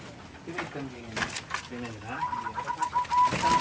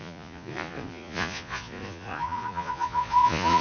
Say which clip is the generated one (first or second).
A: second